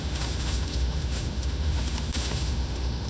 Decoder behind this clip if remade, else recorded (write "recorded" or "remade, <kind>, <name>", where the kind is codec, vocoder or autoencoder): remade, autoencoder, DAC-VAE